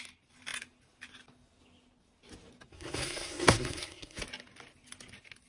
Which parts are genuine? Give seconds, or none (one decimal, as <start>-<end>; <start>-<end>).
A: 0.0-2.7; 4.2-5.5